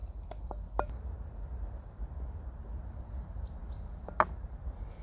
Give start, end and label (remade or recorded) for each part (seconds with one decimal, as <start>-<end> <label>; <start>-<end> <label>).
0.0-5.0 recorded